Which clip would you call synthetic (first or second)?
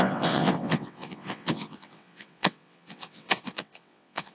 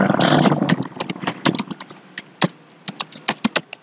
first